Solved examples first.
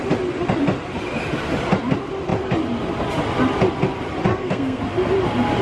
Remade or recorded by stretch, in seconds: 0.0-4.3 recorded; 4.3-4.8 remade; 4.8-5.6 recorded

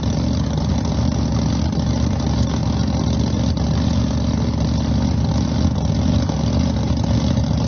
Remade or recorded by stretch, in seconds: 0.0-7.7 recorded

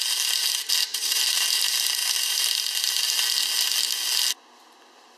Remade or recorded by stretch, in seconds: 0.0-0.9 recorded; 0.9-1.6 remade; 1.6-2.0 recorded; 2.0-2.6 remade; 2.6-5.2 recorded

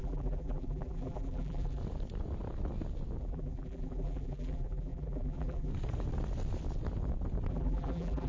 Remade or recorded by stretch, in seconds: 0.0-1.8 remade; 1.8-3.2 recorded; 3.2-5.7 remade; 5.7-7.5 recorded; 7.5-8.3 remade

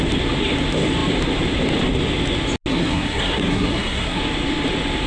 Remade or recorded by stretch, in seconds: 0.0-2.7 recorded; 2.7-4.2 remade; 4.2-5.1 recorded